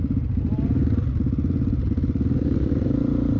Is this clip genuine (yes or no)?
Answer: yes